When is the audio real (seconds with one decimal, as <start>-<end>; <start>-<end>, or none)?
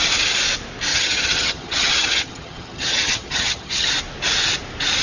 0.0-0.9; 3.9-5.0